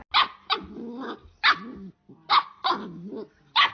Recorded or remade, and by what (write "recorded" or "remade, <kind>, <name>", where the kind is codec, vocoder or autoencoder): recorded